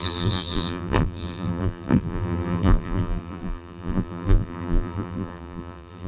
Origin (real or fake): fake